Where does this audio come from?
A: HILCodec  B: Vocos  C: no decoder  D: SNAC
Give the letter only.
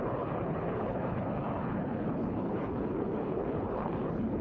A